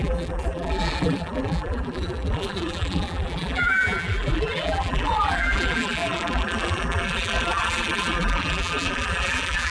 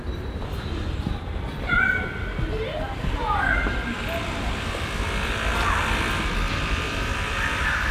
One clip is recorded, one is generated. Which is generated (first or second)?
first